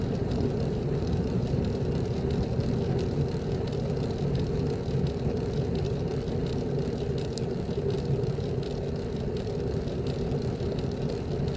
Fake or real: real